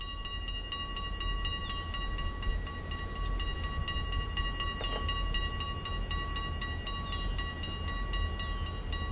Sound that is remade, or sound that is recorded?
recorded